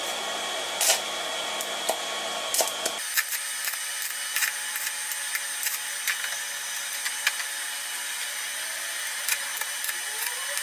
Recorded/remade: recorded